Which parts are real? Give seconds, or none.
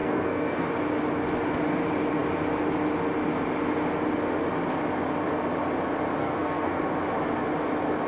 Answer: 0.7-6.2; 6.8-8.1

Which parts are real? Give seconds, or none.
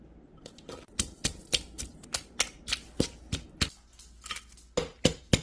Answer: 0.0-5.4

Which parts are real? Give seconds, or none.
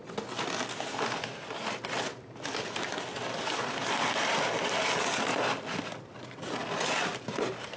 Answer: 0.0-7.8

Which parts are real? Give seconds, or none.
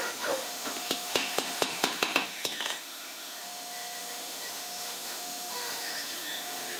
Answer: none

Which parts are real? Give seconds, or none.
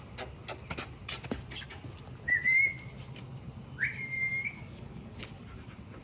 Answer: 0.0-4.2; 5.2-6.0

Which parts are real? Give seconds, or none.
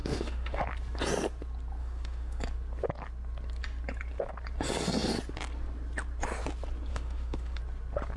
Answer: 0.6-1.8; 2.4-6.9; 7.6-8.2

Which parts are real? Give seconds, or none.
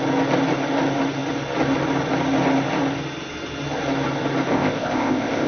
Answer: 0.0-4.5